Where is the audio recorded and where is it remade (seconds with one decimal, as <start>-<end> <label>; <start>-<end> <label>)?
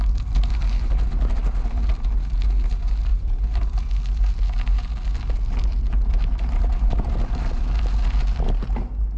0.0-3.1 recorded; 3.1-3.8 remade; 3.8-6.1 recorded; 6.1-7.1 remade; 7.1-9.2 recorded